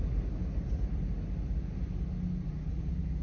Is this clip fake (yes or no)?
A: no